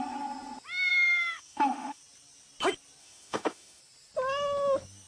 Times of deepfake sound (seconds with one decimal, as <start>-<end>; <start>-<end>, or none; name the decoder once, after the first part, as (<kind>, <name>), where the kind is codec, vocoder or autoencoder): 0.9-2.0 (autoencoder, DAC-VAE); 3.0-3.8